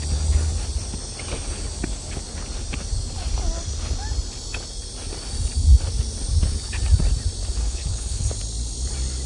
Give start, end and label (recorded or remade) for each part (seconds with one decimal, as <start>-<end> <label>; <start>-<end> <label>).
0.0-7.6 recorded; 7.6-8.3 remade; 8.3-9.3 recorded